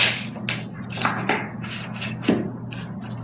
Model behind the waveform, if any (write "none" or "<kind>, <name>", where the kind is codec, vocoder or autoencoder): none